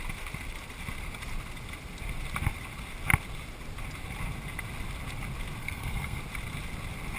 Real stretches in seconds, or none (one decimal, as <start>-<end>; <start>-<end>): 0.0-5.6; 6.2-7.2